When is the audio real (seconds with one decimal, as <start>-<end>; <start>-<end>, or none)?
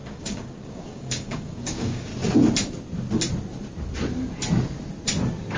2.1-5.6